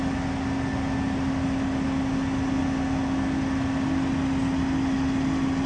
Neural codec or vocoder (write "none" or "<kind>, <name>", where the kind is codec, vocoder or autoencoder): none